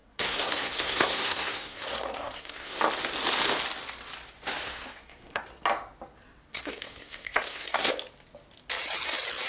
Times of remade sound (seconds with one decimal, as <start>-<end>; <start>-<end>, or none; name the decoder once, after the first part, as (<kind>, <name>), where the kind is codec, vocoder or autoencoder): 0.0-2.8 (codec, SNAC); 4.6-5.4; 6.5-7.9